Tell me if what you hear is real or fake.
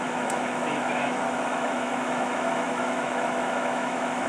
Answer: fake